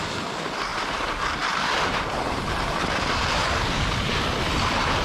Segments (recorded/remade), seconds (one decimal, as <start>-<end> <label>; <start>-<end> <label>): 0.0-5.0 recorded